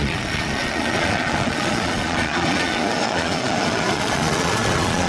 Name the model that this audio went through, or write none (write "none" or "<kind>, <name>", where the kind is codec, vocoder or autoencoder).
vocoder, Vocos